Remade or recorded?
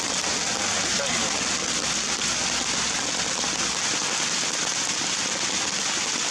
recorded